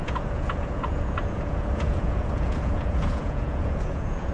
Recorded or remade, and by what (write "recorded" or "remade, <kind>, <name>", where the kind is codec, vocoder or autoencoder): remade, vocoder, Vocos